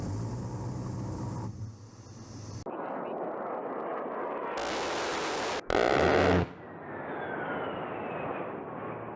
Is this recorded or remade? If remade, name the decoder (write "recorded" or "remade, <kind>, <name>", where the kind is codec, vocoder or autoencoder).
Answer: recorded